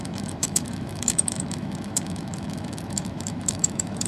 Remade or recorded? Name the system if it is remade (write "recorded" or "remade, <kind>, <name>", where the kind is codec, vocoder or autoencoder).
remade, autoencoder, DAC-VAE